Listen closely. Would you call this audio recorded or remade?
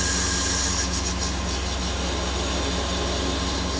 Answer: recorded